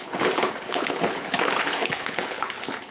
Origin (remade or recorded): remade